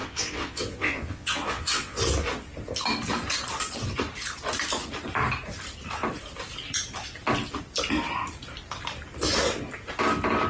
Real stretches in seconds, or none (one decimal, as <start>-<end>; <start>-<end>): 2.0-10.5